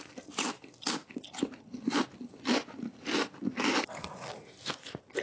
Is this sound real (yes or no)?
yes